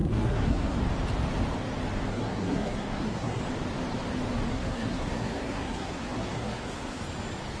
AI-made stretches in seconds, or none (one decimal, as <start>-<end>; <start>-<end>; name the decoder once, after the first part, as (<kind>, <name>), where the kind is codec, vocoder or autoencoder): 0.0-0.8 (codec, SNAC); 2.1-3.4; 4.5-7.0